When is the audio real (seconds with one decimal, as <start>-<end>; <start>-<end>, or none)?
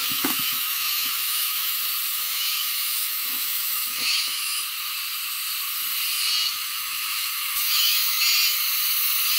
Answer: 1.7-2.1; 4.6-6.4; 8.2-9.4